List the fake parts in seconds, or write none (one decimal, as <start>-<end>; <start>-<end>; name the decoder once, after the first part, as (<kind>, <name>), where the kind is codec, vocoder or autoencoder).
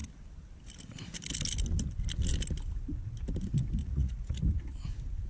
3.8-4.4 (vocoder, Vocos)